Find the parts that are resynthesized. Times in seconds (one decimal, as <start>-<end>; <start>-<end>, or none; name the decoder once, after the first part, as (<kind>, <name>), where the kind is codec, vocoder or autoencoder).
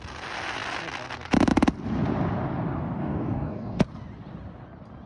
3.0-3.8 (codec, DAC)